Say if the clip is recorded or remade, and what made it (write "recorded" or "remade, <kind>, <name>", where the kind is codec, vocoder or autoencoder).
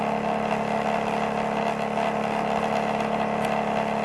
recorded